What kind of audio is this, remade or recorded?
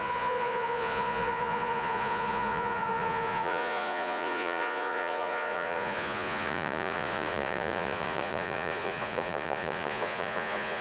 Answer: remade